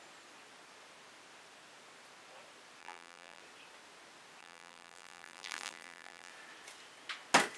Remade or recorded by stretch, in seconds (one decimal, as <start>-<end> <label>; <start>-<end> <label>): 0.0-2.8 recorded; 2.8-3.4 remade; 3.4-4.4 recorded; 4.4-6.3 remade; 6.3-7.6 recorded